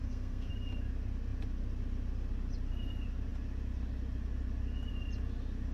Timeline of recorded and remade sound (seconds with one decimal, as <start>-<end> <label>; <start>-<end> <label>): 0.0-0.5 remade; 0.5-5.7 recorded